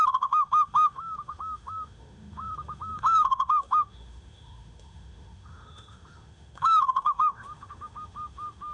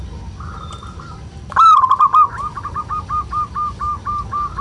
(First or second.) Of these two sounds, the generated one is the first